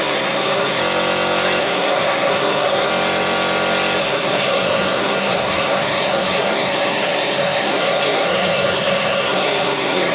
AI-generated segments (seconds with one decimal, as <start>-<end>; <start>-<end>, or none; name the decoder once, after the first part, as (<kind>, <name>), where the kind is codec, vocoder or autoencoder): 0.0-0.8 (codec, SNAC); 1.6-2.9; 4.0-10.1